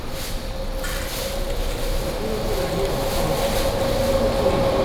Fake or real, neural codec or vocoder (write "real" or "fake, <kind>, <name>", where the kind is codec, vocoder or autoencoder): real